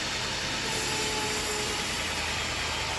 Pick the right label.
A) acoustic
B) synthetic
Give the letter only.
A